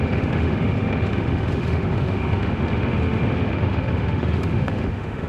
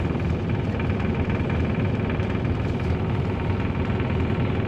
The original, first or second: second